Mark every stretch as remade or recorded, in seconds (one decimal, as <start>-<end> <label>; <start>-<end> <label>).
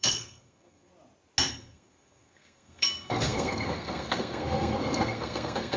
0.0-0.9 remade; 0.9-1.5 recorded; 1.5-5.8 remade